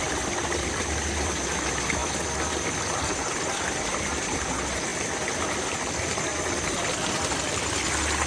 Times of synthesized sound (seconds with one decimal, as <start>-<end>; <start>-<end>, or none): none